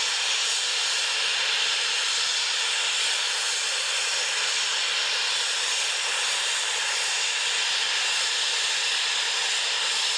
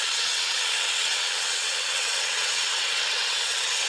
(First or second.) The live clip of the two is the first